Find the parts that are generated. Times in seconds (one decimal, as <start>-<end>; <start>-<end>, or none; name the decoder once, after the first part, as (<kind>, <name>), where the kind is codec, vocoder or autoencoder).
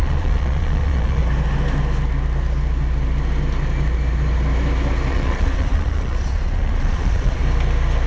0.0-1.2 (vocoder, Vocos); 5.1-7.4